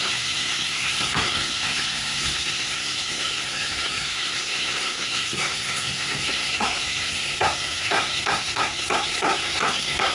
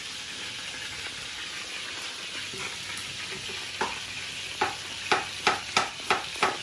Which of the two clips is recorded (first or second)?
second